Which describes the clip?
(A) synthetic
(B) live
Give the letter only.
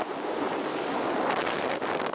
B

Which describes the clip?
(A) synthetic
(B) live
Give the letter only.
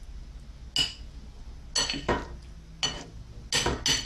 B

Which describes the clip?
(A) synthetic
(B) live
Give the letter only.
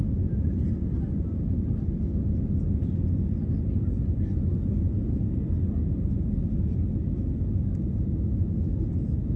B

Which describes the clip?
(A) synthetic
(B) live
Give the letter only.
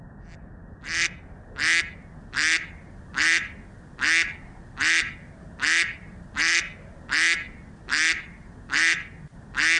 B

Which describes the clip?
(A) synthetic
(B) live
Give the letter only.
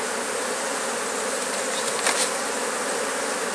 B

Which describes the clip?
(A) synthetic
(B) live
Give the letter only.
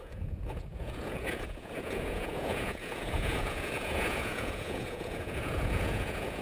A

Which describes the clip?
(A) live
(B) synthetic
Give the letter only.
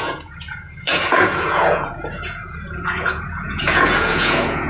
B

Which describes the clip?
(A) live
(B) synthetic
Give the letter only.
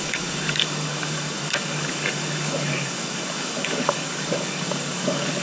B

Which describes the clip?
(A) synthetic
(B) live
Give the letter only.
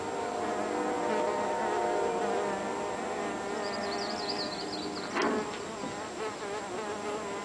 B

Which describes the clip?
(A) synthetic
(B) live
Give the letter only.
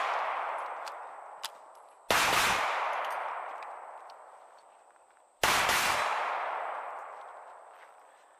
B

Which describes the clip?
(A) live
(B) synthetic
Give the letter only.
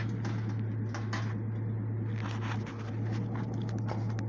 A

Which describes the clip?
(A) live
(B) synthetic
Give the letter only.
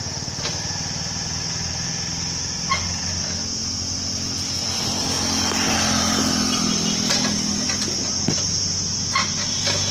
A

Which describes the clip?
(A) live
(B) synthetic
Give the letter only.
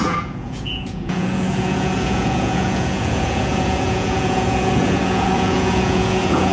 B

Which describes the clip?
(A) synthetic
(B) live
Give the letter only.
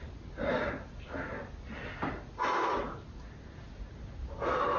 B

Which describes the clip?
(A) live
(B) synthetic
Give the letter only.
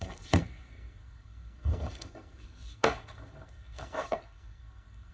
B